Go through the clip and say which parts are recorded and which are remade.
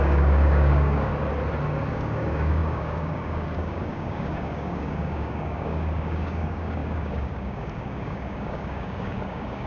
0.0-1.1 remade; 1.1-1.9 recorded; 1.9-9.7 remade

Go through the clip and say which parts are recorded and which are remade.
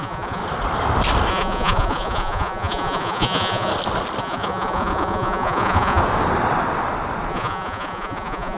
0.0-0.4 remade; 0.4-1.3 recorded; 1.3-3.7 remade; 3.7-4.2 recorded; 4.2-6.0 remade; 6.0-7.3 recorded; 7.3-8.6 remade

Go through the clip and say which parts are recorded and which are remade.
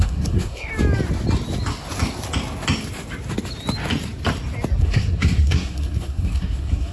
0.0-0.7 remade; 0.7-4.8 recorded; 4.8-6.9 remade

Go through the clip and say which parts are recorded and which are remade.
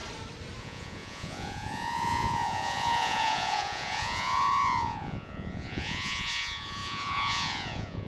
0.0-0.6 recorded; 0.6-8.1 remade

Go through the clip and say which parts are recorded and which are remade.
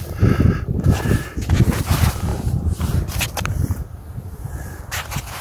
0.0-2.3 recorded; 2.3-2.9 remade; 2.9-5.4 recorded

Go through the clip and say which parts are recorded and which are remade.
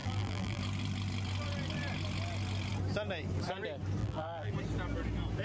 0.0-0.6 remade; 0.6-4.0 recorded; 4.0-4.5 remade; 4.5-5.4 recorded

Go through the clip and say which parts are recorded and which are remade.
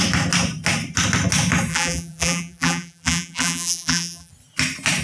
0.0-1.7 recorded; 1.7-4.3 remade; 4.3-5.0 recorded